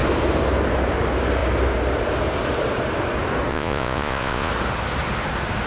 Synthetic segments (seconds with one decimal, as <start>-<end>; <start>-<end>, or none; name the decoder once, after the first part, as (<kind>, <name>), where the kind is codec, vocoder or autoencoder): 3.5-4.5 (vocoder, Vocos)